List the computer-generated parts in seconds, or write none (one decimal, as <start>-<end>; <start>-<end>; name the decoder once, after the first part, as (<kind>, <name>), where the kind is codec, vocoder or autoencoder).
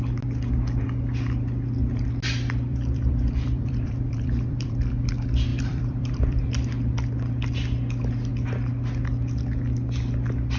2.7-5.1 (vocoder, BigVGAN v2); 5.5-6.7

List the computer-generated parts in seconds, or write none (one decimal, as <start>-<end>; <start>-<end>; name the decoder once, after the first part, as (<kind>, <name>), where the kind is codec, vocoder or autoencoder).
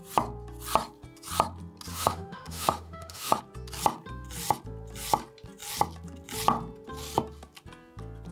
1.9-3.4 (autoencoder, DAC-VAE)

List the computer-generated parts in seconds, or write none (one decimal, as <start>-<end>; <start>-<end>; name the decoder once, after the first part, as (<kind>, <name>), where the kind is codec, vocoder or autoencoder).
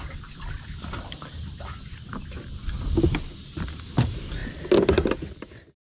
none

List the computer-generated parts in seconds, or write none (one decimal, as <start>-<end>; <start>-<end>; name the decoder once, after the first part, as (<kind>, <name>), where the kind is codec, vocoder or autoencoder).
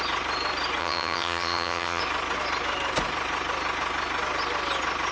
0.8-2.0 (vocoder, HiFi-GAN)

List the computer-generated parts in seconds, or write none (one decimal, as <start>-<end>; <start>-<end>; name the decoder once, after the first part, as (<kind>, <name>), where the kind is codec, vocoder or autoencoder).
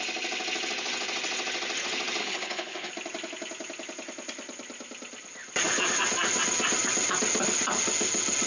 2.2-2.9 (codec, HILCodec)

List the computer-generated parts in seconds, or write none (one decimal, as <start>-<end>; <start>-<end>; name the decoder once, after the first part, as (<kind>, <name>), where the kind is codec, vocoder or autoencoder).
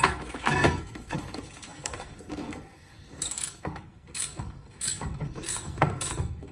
0.0-6.5 (codec, SNAC)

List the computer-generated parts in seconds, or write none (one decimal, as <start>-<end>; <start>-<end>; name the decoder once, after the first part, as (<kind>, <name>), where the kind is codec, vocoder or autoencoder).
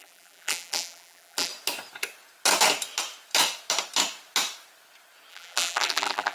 0.0-1.5 (vocoder, BigVGAN v2); 5.3-6.3